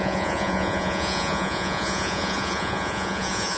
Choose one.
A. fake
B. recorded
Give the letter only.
A